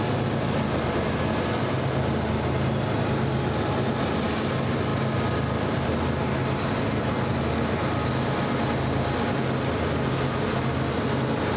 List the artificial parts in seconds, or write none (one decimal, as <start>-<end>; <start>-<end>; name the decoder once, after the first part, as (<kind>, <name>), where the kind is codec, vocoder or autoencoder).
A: none

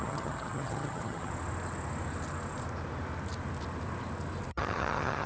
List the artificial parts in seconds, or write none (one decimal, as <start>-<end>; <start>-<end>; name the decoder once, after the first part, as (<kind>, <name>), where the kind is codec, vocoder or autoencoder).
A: 0.0-1.3 (vocoder, HiFi-GAN); 4.5-5.3

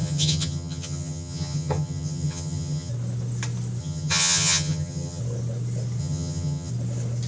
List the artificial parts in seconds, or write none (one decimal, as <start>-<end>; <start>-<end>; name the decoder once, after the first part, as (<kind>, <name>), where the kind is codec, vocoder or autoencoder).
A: 0.0-2.9 (vocoder, HiFi-GAN); 3.8-5.2; 6.0-6.7